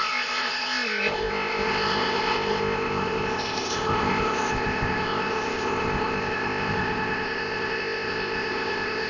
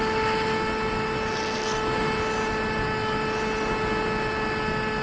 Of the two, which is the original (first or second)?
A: second